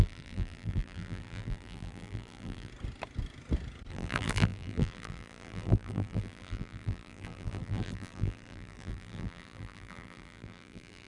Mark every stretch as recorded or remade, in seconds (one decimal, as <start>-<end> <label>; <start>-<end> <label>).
0.0-2.7 remade; 2.7-3.9 recorded; 3.9-11.1 remade